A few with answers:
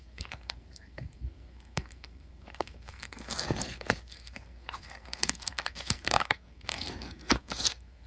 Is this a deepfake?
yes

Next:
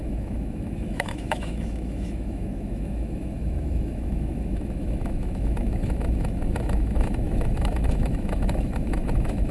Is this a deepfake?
yes